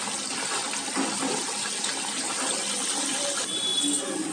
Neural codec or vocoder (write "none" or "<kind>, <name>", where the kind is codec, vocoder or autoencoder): none